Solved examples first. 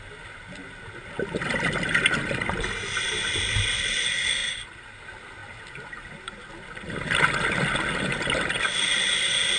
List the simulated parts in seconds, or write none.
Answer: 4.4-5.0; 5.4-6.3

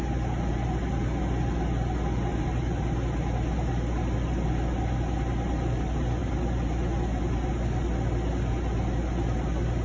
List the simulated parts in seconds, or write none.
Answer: none

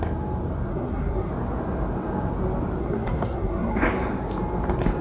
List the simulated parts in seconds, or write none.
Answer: 0.7-1.3; 2.8-3.9